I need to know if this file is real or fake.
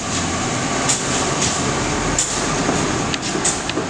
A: real